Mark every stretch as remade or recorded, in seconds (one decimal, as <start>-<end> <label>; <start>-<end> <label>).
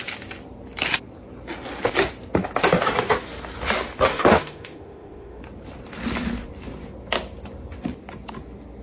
0.0-4.1 recorded; 4.1-5.4 remade; 5.4-8.8 recorded